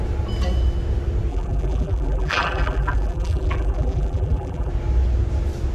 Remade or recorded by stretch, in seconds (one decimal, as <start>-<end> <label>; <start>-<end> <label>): 0.0-1.3 recorded; 1.3-4.7 remade; 4.7-5.7 recorded

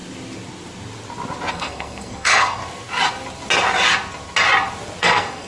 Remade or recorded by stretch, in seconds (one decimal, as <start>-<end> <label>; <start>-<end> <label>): 0.0-1.5 recorded; 1.5-2.6 remade; 2.6-5.0 recorded; 5.0-5.5 remade

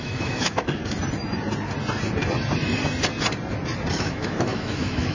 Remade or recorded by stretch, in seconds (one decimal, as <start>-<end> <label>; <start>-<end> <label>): 0.0-0.8 remade; 0.8-3.9 recorded; 3.9-5.1 remade

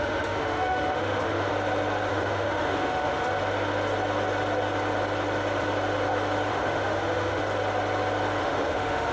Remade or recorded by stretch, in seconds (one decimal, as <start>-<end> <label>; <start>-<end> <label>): 0.0-1.5 remade; 1.5-2.1 recorded; 2.1-3.4 remade; 3.4-6.5 recorded; 6.5-7.4 remade; 7.4-8.4 recorded; 8.4-9.1 remade

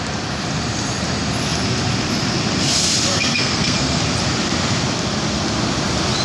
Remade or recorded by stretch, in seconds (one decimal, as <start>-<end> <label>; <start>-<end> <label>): 0.0-3.1 recorded; 3.1-4.0 remade; 4.0-6.2 recorded